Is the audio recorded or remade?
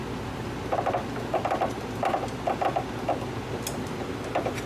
recorded